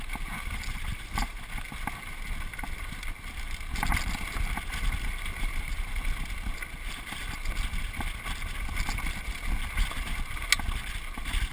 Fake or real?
real